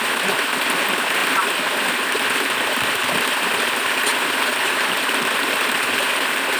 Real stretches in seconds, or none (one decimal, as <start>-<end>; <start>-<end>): 0.0-6.6